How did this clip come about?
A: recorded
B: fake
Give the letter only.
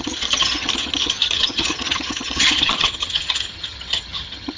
B